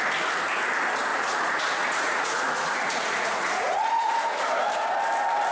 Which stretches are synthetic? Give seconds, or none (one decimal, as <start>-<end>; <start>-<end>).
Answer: 1.1-4.4